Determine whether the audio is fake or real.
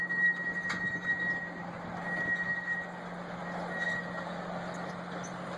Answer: real